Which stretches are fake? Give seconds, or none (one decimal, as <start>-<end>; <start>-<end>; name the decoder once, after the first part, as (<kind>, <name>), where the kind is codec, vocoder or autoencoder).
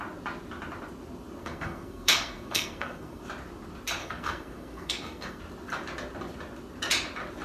1.4-3.2 (codec, SNAC); 4.0-5.4